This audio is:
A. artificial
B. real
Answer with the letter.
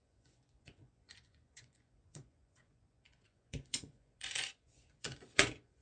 A